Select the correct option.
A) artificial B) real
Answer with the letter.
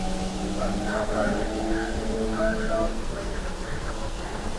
A